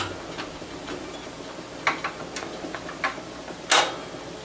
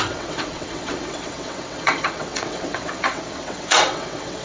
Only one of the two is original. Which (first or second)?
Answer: first